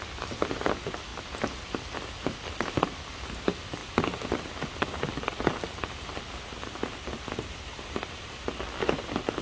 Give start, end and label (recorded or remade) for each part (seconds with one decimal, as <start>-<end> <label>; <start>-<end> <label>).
0.0-9.4 recorded